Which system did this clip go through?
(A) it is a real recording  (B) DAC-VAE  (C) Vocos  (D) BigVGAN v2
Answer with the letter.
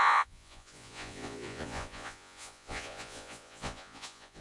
C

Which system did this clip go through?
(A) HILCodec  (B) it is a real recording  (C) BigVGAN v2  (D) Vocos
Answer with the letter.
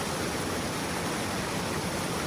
B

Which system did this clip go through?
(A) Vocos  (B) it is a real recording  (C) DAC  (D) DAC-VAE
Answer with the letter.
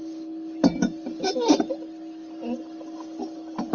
B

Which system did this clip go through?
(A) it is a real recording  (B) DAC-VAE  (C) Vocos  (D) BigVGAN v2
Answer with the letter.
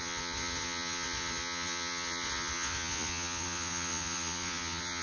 C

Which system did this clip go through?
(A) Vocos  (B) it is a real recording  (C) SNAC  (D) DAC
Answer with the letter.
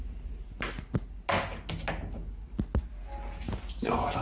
B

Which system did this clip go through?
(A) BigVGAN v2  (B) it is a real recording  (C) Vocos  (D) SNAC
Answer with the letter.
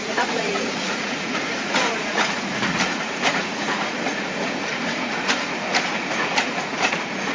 C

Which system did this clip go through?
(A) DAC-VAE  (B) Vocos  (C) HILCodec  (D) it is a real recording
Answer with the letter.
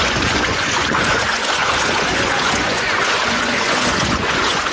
B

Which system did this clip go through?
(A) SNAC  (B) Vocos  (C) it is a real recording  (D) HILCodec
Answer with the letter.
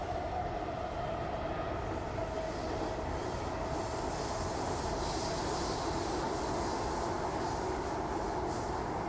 C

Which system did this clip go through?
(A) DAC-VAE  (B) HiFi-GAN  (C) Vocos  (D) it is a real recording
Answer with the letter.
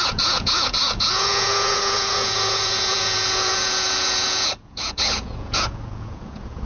C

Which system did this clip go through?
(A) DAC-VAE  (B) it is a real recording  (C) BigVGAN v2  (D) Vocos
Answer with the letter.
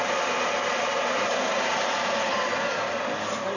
B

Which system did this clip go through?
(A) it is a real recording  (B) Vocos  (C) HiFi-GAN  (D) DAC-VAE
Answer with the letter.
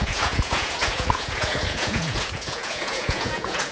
B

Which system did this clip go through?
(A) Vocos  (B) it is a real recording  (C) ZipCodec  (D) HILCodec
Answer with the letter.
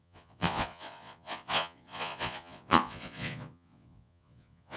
A